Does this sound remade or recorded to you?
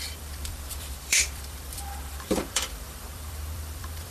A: remade